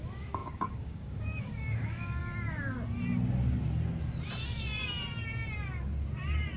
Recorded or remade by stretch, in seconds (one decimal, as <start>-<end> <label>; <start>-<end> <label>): 0.0-2.2 remade; 2.2-6.6 recorded